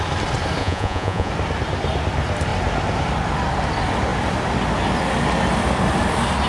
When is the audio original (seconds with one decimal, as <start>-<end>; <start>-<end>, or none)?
0.0-0.6; 1.3-6.5

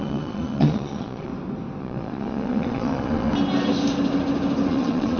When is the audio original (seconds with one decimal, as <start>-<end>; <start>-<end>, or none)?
1.3-1.8; 3.3-4.7

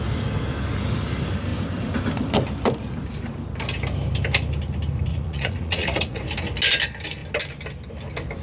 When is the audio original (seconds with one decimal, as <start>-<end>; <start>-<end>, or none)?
0.0-5.1; 6.2-8.4

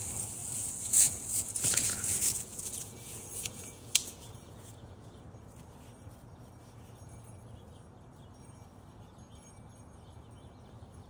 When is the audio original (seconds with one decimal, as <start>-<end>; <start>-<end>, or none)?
0.0-0.4; 5.2-11.1

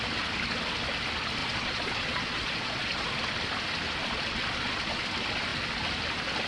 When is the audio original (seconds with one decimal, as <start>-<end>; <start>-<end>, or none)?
0.0-1.4; 3.2-4.0; 5.1-6.5

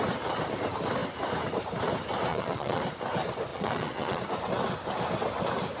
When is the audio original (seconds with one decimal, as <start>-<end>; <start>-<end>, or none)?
0.0-2.3; 2.8-3.5; 4.2-5.8